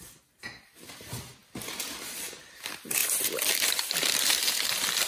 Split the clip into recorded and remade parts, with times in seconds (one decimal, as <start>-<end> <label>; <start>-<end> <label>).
0.0-5.1 recorded